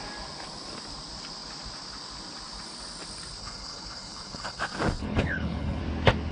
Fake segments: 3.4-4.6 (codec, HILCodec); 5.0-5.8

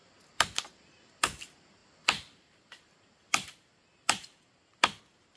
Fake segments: 1.8-5.0 (vocoder, BigVGAN v2)

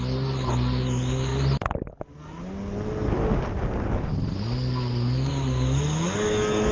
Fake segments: none

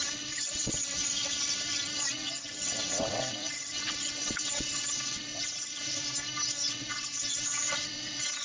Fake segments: 0.0-6.0 (vocoder, WaveNeXt); 6.7-8.4

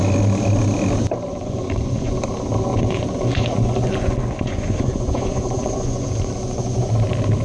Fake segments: 1.3-2.2 (vocoder, Vocos); 2.7-6.9

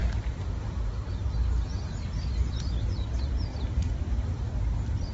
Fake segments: 3.5-4.3 (vocoder, BigVGAN v2)